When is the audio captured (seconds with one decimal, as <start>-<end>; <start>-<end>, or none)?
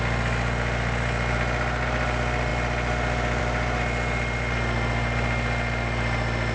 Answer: 0.0-6.5